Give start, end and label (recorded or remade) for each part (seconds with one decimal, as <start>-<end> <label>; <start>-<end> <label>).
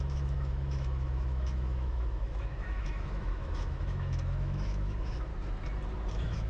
0.0-5.3 remade; 5.3-6.1 recorded; 6.1-6.5 remade